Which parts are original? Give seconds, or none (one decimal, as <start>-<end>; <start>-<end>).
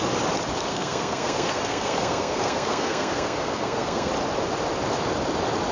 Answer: 0.0-0.7; 4.1-5.7